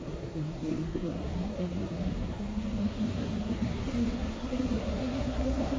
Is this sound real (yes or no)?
no